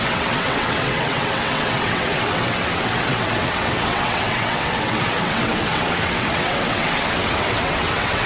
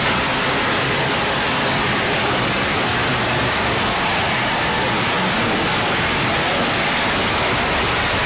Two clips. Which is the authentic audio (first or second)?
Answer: second